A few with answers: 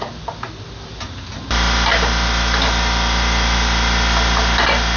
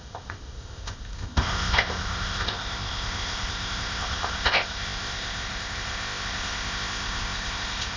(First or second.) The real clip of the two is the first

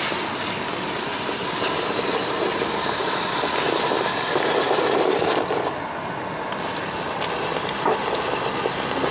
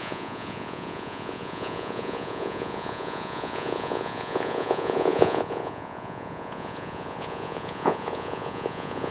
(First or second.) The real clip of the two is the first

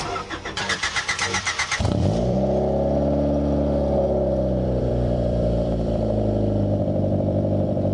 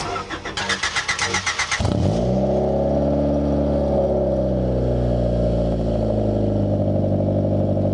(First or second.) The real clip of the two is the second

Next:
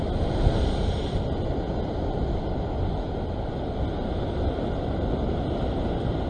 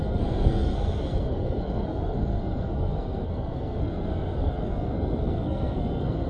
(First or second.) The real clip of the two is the first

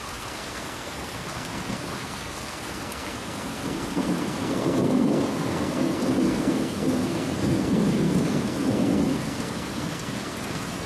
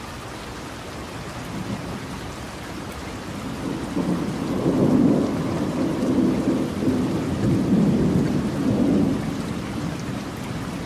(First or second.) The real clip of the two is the second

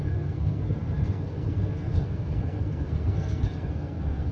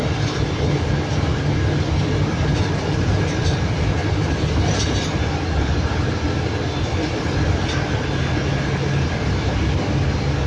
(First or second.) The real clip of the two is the second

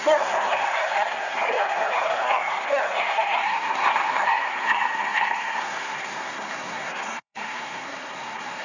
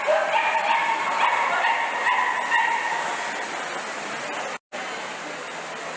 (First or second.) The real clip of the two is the second